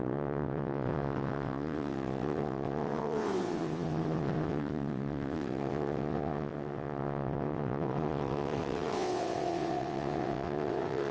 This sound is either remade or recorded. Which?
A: remade